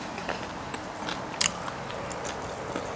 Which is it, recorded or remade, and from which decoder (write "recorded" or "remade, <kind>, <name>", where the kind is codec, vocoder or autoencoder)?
recorded